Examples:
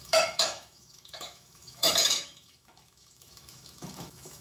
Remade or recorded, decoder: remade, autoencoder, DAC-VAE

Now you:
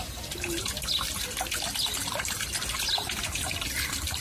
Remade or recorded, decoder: recorded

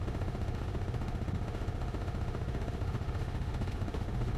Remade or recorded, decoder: remade, autoencoder, DAC-VAE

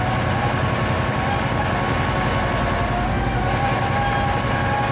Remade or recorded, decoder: recorded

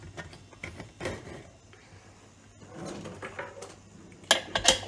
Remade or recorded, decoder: recorded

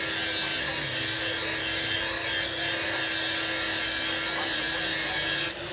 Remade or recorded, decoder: recorded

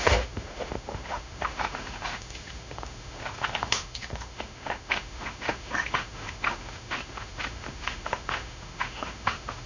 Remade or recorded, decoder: remade, autoencoder, DAC-VAE